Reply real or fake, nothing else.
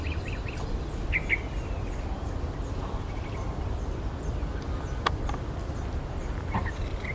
real